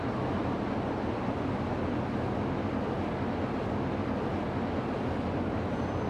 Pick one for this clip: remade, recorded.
recorded